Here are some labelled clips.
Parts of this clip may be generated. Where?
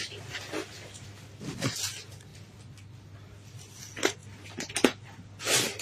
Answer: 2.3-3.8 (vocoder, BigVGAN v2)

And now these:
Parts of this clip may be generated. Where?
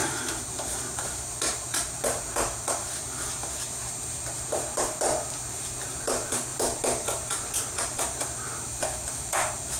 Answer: 0.0-9.8 (vocoder, BigVGAN v2)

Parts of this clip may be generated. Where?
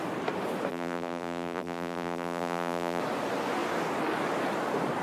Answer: 0.7-3.0 (vocoder, BigVGAN v2)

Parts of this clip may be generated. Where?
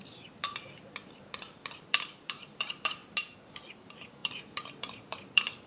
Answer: 0.0-3.0 (vocoder, BigVGAN v2); 3.7-5.7